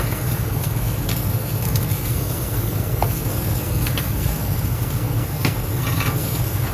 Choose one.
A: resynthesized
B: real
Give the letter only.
A